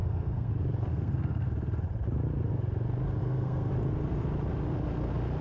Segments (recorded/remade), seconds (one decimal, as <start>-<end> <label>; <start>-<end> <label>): 0.0-0.5 remade; 0.5-0.9 recorded; 0.9-1.5 remade; 1.5-3.2 recorded; 3.2-3.7 remade; 3.7-5.4 recorded